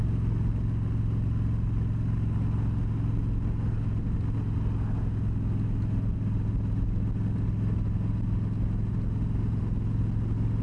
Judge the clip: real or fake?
real